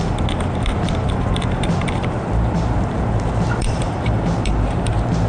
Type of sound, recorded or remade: remade